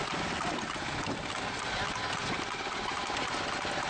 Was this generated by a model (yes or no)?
no